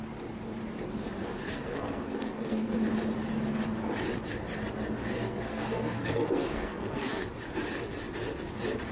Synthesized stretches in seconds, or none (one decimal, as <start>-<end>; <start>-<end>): 1.5-2.8; 5.1-7.2